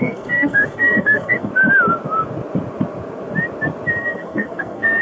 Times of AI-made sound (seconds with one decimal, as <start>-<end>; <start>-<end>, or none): 0.0-1.5; 4.0-5.0